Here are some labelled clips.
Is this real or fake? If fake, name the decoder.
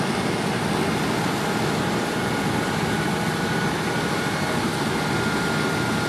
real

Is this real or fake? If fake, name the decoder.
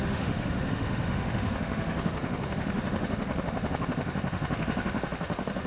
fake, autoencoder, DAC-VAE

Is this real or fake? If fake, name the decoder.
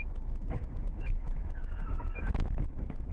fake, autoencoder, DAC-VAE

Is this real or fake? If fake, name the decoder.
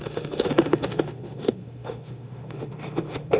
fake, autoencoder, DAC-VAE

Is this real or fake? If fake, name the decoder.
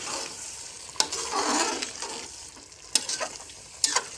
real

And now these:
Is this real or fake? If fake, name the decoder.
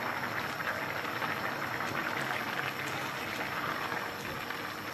real